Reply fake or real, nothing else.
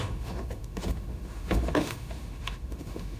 fake